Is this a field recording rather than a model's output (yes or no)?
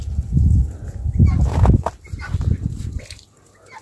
yes